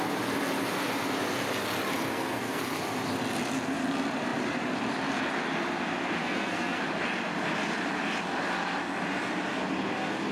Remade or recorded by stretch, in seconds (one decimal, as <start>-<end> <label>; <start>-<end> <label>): 0.0-2.1 recorded; 2.1-2.6 remade; 2.6-6.2 recorded; 6.2-6.8 remade; 6.8-10.3 recorded